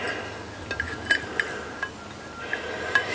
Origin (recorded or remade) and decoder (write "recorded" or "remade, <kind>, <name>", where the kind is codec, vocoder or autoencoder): recorded